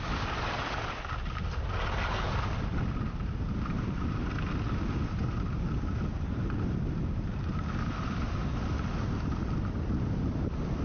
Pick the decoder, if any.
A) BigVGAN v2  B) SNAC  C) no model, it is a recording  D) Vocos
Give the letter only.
C